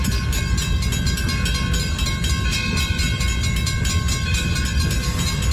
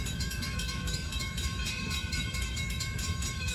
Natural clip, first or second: first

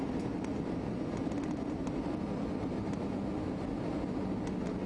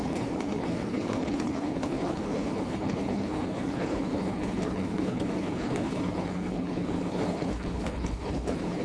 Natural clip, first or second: first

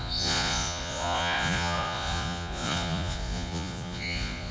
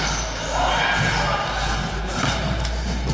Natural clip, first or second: second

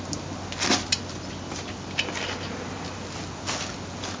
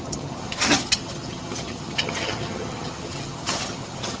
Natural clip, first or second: first